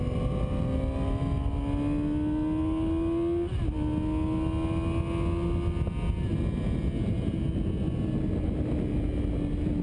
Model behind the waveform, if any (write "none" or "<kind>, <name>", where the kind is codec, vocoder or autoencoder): none